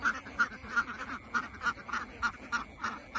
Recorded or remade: recorded